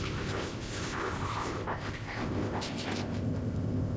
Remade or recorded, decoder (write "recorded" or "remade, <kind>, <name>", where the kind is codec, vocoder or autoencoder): remade, codec, ZipCodec